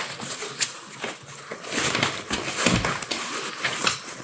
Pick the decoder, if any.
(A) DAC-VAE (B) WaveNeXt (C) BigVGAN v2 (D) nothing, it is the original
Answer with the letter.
D